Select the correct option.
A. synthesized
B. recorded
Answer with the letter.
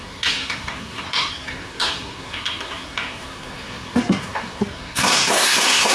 A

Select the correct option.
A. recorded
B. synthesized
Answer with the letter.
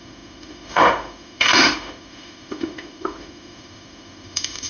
B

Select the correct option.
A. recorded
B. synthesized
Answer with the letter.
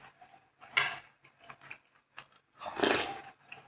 A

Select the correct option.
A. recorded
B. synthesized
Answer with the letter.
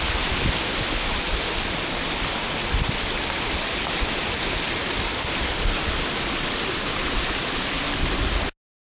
A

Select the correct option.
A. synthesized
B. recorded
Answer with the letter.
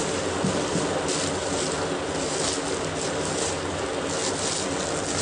B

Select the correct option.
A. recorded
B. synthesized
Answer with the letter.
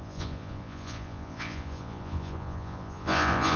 B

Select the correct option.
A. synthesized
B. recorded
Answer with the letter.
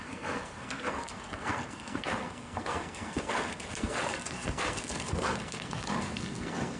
A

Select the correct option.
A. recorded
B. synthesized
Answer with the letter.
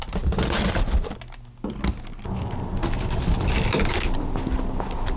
A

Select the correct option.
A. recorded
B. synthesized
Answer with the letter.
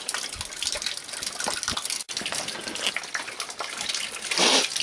A